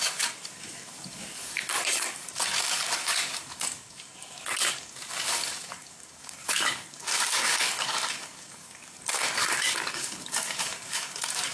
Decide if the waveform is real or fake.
fake